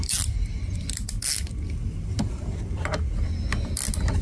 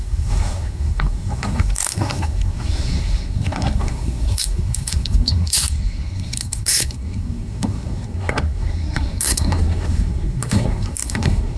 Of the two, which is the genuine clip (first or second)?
first